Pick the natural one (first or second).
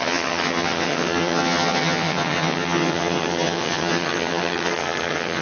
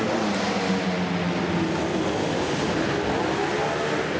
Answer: second